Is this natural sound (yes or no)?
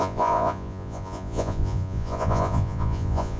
no